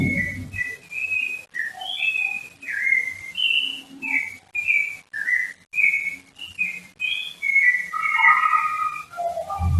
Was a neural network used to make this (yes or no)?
no